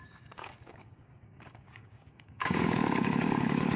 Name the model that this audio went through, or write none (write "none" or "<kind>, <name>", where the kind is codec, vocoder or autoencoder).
codec, DAC